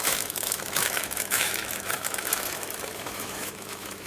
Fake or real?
fake